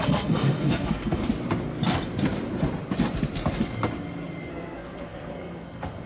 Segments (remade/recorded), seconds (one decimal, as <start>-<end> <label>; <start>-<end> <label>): 0.0-1.2 remade; 1.2-4.5 recorded; 4.5-6.1 remade